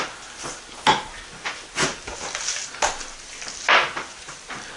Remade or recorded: recorded